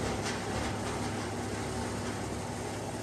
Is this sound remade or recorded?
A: recorded